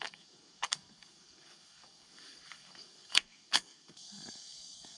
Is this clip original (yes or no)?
no